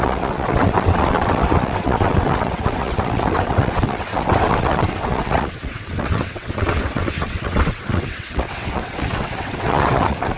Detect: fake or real fake